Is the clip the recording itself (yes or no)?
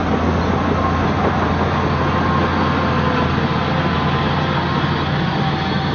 yes